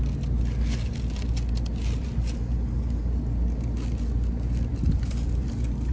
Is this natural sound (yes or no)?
yes